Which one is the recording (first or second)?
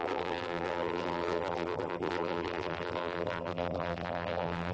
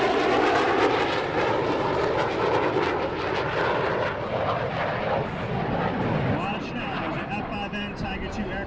second